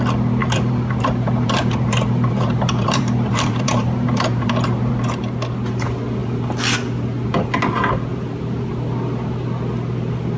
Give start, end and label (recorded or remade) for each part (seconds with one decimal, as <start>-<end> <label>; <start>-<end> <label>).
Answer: 0.0-0.4 recorded; 0.4-4.9 remade; 4.9-8.1 recorded; 8.1-8.7 remade; 8.7-10.4 recorded